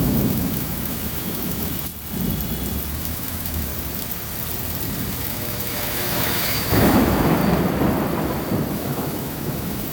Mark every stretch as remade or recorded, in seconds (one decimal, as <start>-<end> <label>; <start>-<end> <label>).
0.0-1.9 remade; 1.9-2.9 recorded; 2.9-3.7 remade; 3.7-5.2 recorded; 5.2-7.4 remade; 7.4-8.7 recorded; 8.7-9.9 remade